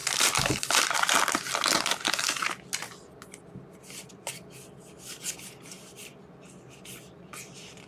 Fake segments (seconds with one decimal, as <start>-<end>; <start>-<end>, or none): none

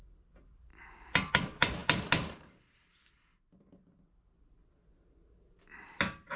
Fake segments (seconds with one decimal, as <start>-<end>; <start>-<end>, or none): none

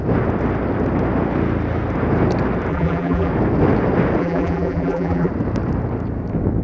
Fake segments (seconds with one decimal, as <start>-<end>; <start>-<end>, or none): 2.7-3.3; 4.2-5.3

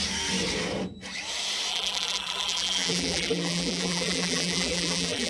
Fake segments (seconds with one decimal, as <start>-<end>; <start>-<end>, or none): 1.7-5.3

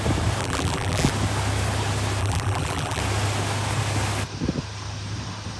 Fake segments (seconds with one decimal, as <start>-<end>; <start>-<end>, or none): 0.4-1.1; 2.2-3.0

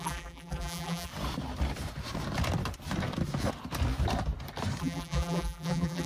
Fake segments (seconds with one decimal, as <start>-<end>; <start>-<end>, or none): 0.0-1.1; 4.8-6.1

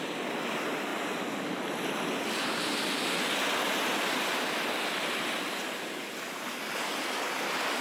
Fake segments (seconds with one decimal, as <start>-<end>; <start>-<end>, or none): none

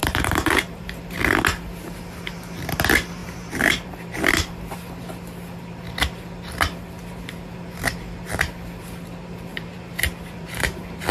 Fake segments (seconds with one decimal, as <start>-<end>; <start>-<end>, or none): 0.0-1.0; 3.2-4.3; 9.5-11.1